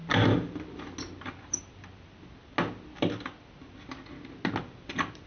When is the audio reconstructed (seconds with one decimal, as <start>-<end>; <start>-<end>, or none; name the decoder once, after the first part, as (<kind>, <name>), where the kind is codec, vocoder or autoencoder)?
none